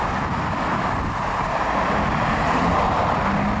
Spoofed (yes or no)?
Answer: no